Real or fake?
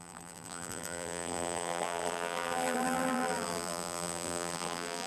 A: fake